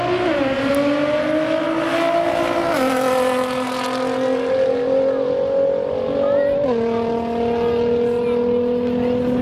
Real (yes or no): yes